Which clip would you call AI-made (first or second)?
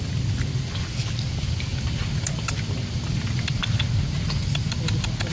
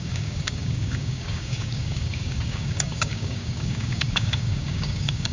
second